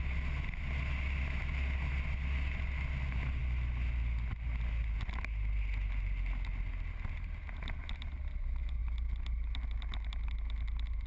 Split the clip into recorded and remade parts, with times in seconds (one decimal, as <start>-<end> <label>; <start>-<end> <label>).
0.0-11.1 recorded